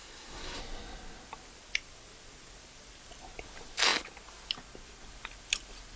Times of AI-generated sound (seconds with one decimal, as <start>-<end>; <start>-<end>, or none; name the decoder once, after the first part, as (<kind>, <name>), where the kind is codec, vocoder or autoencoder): 0.0-0.6 (codec, SNAC)